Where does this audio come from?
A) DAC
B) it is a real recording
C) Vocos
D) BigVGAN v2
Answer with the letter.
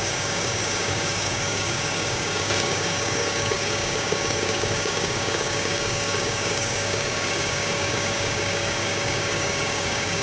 A